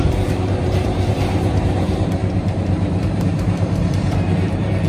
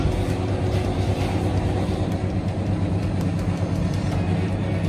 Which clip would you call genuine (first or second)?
second